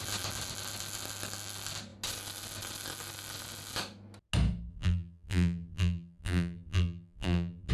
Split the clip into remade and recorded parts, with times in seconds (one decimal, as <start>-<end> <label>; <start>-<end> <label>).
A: 0.0-4.7 recorded; 4.7-7.7 remade